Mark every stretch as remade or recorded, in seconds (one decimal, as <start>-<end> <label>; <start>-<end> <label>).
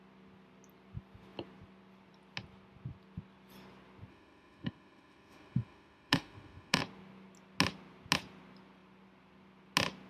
0.0-4.1 recorded; 4.1-6.8 remade; 6.8-10.1 recorded